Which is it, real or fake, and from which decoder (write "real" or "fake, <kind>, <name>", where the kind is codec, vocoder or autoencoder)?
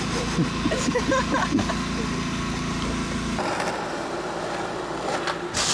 real